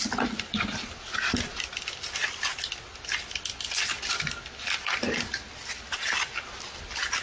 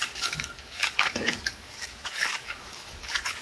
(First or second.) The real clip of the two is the first